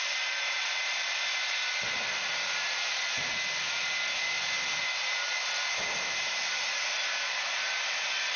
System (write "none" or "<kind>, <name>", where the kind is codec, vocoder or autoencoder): none